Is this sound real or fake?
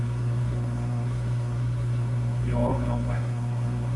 fake